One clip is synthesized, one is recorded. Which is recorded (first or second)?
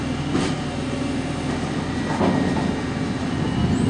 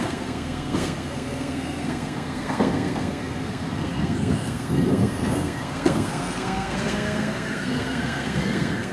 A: first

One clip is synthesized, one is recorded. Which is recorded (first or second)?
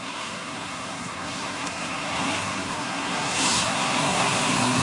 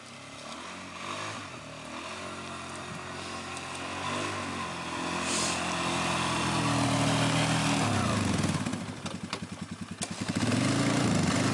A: second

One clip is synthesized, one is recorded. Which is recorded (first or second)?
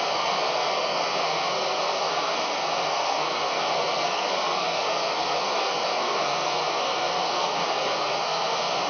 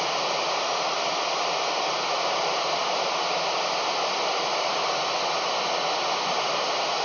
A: second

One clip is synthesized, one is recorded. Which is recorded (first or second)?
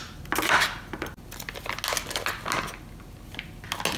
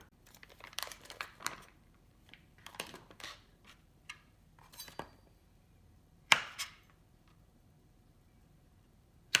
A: first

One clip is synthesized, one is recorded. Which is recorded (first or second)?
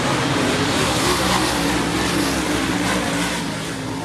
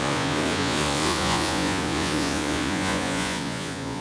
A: first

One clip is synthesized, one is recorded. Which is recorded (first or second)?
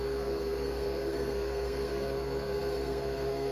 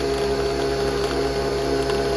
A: second